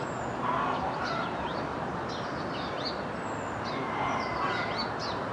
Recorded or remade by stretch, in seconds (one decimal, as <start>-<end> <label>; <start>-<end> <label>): 0.0-5.3 recorded